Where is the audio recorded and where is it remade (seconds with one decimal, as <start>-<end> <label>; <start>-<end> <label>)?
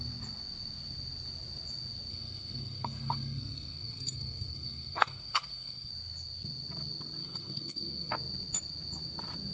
0.0-2.1 recorded; 2.1-5.9 remade; 5.9-7.2 recorded; 7.2-8.1 remade; 8.1-9.5 recorded